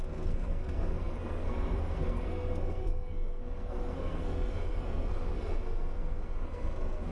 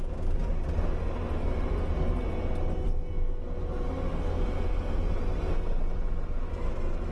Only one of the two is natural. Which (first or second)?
second